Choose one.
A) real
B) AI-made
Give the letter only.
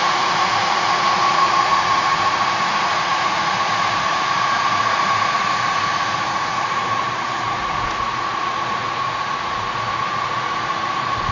B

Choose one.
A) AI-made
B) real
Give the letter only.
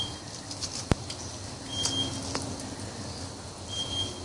B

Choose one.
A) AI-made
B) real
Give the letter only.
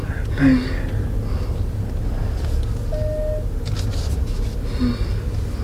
B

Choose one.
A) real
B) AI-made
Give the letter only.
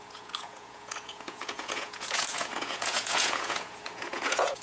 B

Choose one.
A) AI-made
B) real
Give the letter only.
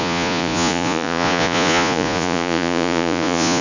A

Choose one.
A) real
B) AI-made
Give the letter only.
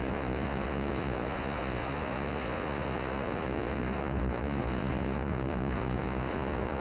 B